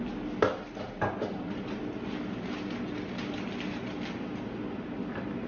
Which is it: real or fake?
real